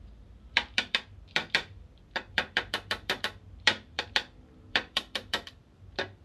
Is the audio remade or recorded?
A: remade